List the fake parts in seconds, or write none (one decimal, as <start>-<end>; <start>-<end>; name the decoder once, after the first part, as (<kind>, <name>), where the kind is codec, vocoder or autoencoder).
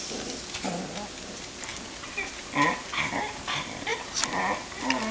none